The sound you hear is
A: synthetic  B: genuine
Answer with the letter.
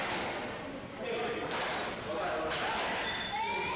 B